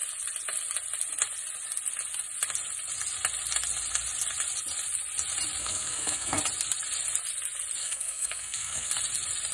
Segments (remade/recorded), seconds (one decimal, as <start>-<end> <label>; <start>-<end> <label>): 0.0-5.6 recorded; 5.6-6.4 remade; 6.4-7.8 recorded; 7.8-8.9 remade; 8.9-9.5 recorded